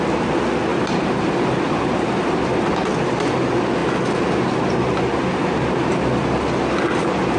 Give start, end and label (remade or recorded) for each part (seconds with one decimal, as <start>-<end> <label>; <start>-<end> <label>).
0.0-0.7 recorded; 0.7-2.4 remade; 2.4-7.4 recorded